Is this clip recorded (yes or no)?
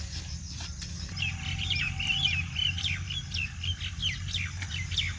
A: yes